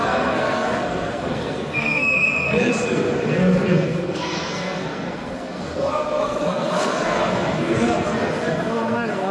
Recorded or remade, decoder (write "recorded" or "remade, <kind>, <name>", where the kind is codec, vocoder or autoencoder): remade, codec, SNAC